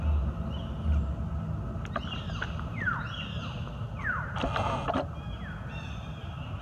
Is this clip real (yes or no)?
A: yes